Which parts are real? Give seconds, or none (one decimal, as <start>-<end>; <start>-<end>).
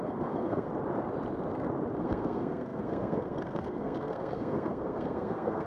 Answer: 0.7-2.0